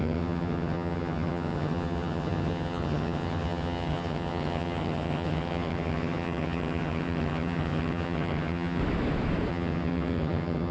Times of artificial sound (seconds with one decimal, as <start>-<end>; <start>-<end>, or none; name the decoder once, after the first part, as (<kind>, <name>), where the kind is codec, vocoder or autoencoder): 0.0-8.8 (vocoder, HiFi-GAN); 9.5-10.7

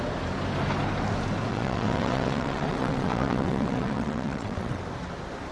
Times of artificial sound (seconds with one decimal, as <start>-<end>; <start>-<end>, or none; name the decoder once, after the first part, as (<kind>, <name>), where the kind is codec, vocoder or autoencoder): 1.5-4.8 (vocoder, WaveNeXt)

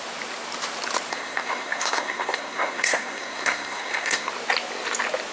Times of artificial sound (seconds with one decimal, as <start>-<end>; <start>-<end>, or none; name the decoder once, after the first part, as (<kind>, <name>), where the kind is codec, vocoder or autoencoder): 1.1-4.3 (codec, SNAC)

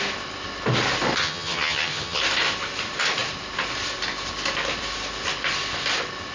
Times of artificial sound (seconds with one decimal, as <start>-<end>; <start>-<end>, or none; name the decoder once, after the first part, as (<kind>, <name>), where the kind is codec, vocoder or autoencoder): 1.2-2.2 (vocoder, HiFi-GAN)